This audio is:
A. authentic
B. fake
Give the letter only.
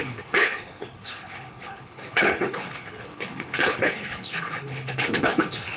B